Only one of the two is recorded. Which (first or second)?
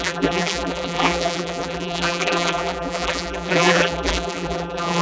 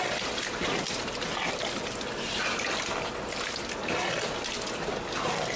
second